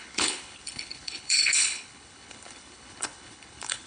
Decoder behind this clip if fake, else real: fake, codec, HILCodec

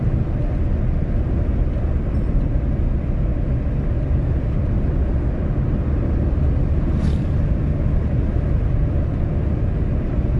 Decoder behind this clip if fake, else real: real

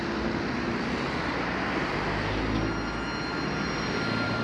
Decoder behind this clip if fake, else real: real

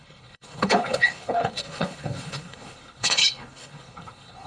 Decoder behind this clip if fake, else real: fake, codec, HILCodec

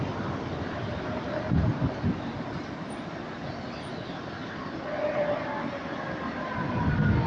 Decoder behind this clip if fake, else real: real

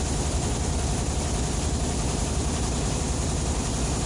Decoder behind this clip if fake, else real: real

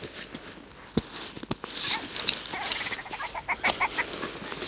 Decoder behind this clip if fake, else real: real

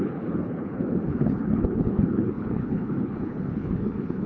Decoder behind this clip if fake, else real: fake, codec, HILCodec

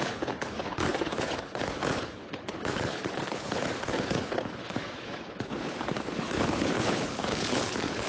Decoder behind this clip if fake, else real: fake, codec, HILCodec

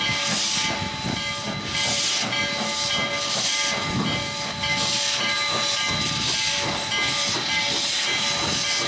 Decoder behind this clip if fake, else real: real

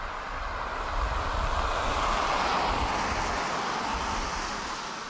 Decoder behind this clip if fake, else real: real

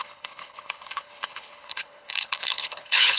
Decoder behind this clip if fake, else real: fake, codec, HILCodec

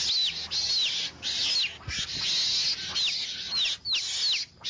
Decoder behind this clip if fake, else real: real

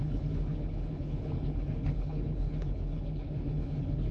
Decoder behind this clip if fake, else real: fake, codec, HILCodec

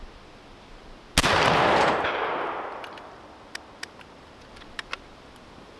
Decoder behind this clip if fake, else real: real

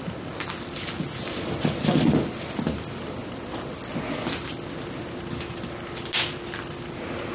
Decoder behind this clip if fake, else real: real